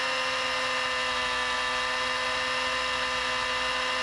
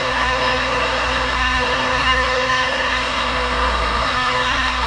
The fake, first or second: second